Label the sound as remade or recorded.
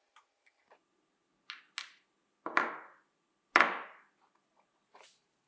recorded